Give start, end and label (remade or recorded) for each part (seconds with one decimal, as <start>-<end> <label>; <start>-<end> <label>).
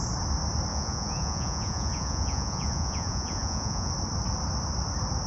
0.0-0.7 recorded; 0.7-3.9 remade; 3.9-5.3 recorded